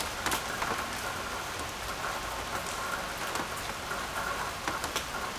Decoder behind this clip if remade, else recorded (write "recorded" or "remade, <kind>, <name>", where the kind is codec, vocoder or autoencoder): recorded